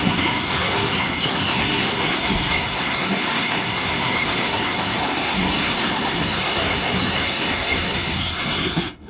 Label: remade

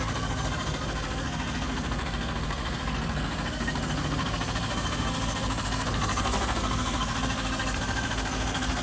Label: remade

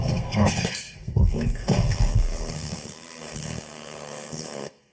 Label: remade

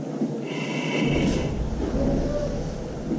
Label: recorded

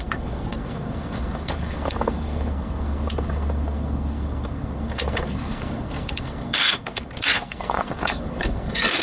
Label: remade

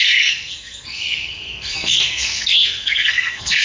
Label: remade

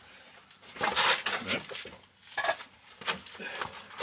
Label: recorded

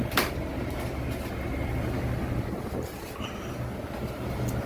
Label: recorded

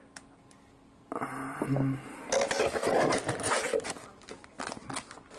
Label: recorded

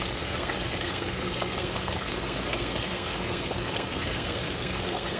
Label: remade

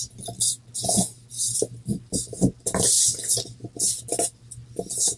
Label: recorded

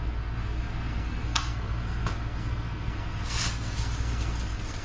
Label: remade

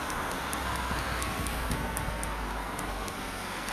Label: remade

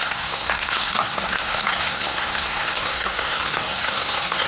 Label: remade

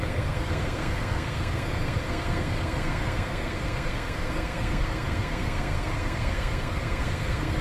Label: remade